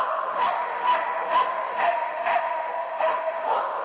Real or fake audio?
fake